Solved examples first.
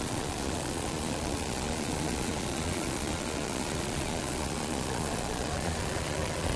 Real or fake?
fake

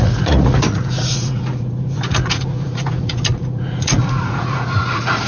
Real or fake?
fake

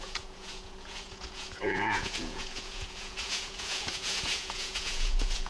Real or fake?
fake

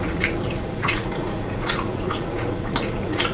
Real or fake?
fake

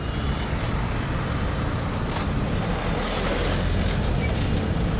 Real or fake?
real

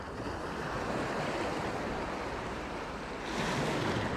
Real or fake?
real